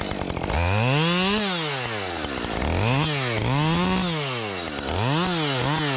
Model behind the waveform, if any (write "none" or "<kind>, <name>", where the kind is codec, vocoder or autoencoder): none